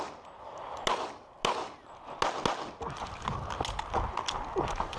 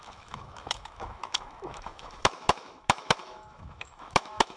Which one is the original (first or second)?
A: first